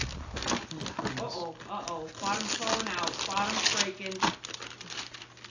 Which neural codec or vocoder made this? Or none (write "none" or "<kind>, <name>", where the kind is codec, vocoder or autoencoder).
none